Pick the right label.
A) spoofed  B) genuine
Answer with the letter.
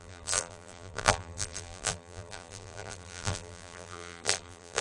A